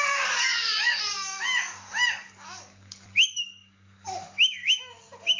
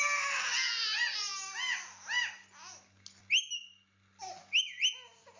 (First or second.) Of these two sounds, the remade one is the first